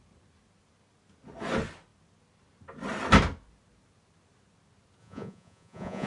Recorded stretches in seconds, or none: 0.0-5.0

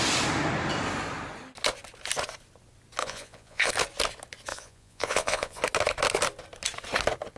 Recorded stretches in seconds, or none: 0.0-3.0; 3.7-4.5; 5.6-7.4

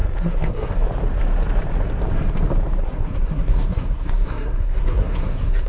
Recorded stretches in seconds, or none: 0.7-2.8

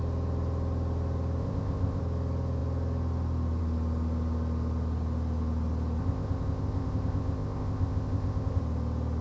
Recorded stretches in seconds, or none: 0.0-1.4; 2.0-6.0; 8.6-9.2

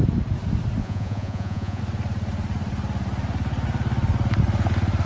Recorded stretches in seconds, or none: 0.0-0.8; 1.8-5.1

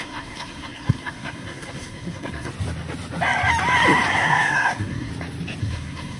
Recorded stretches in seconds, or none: 2.5-4.1; 5.1-5.6

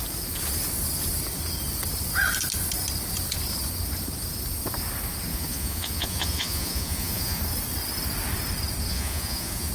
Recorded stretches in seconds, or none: 0.0-5.3; 7.4-8.9

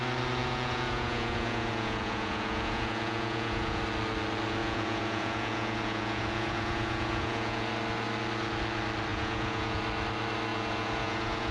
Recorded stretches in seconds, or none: 0.0-0.4; 3.8-4.6; 7.7-9.1; 9.8-10.5